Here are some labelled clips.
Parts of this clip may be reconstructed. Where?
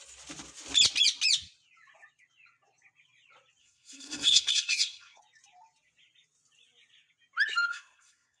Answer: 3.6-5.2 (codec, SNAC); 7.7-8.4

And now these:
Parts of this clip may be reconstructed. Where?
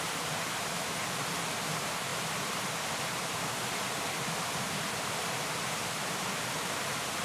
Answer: 0.0-2.1 (vocoder, BigVGAN v2); 5.3-7.2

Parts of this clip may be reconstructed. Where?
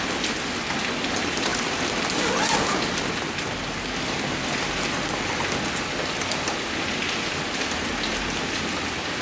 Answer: none